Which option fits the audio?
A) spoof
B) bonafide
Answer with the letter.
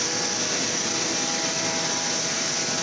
B